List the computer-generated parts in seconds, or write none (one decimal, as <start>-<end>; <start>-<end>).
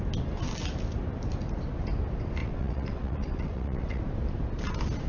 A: 2.4-4.0